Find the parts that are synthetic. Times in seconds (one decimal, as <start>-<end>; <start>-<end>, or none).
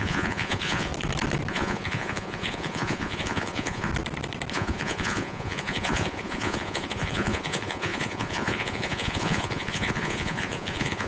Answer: 0.0-0.9; 1.5-3.9; 4.5-11.1